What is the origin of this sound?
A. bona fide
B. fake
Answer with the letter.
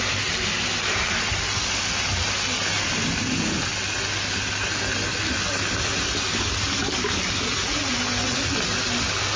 A